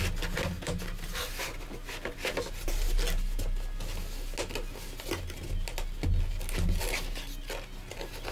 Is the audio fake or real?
real